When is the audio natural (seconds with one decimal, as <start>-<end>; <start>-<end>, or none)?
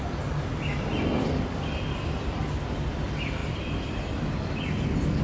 0.0-1.1; 2.4-3.4; 4.2-5.2